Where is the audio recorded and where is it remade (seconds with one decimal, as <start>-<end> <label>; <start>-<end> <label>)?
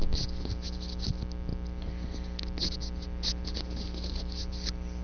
0.0-5.0 recorded